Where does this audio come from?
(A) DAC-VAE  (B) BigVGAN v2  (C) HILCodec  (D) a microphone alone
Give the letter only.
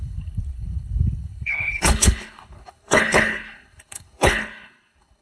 C